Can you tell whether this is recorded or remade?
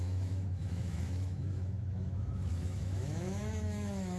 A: remade